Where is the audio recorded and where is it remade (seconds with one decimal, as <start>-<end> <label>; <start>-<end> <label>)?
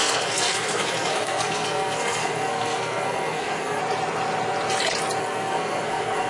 0.0-3.8 remade; 3.8-5.2 recorded; 5.2-6.3 remade